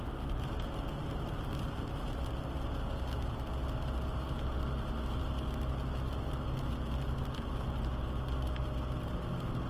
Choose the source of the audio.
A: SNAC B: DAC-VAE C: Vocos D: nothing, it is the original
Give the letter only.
D